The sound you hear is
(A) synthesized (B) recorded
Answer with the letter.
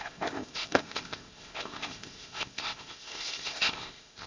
A